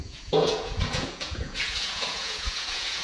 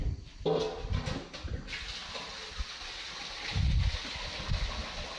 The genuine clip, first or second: second